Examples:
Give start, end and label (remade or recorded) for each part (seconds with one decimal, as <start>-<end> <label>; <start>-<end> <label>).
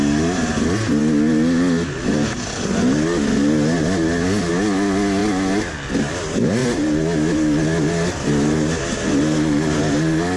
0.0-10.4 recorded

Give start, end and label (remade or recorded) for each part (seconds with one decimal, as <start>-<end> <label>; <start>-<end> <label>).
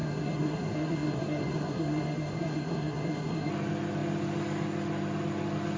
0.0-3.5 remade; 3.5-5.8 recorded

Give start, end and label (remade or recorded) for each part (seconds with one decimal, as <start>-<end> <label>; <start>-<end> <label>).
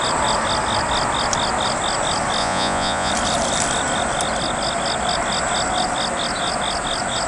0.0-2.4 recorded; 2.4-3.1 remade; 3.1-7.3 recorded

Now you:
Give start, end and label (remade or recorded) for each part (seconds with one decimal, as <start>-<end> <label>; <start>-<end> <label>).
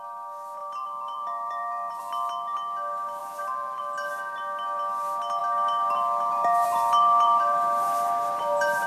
0.0-0.6 recorded; 0.6-2.0 remade; 2.0-3.2 recorded; 3.2-3.8 remade; 3.8-5.4 recorded; 5.4-8.9 remade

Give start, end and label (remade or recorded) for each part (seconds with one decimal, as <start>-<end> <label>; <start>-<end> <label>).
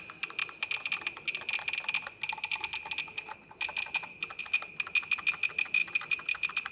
0.0-5.8 recorded; 5.8-6.7 remade